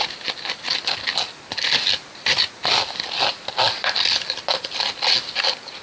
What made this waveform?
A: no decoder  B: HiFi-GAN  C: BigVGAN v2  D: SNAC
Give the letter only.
A